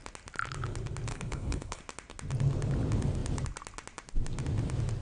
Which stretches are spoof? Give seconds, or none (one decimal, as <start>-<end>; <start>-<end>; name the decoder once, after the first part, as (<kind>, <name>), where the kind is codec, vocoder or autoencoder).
1.1-1.8 (codec, HILCodec)